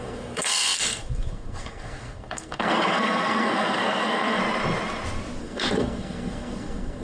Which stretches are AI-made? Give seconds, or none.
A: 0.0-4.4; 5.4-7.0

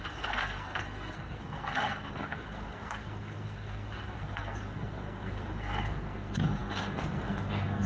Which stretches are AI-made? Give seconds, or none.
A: 0.0-7.9

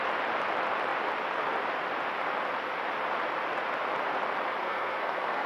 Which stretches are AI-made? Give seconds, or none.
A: 4.6-5.5

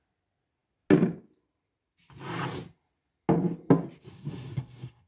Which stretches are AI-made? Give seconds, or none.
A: 4.1-5.1

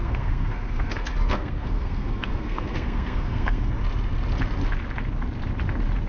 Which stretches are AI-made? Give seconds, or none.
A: 0.0-3.7

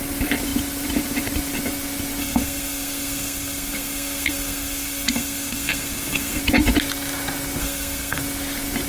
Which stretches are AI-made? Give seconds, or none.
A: 2.2-6.4; 7.6-8.2